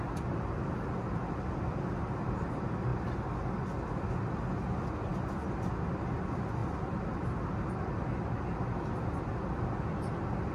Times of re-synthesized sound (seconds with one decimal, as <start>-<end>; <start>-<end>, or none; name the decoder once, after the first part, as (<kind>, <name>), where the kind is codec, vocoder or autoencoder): none